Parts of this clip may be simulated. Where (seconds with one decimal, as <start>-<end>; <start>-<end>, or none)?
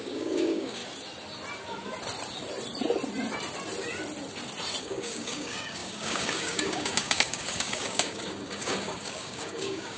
0.0-0.8; 4.8-10.0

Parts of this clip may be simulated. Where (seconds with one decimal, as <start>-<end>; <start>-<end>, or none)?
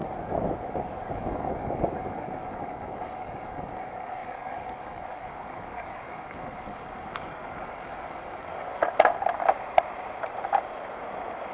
0.7-8.8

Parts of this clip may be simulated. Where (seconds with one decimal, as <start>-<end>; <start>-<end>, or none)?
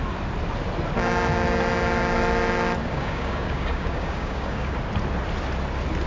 2.8-4.8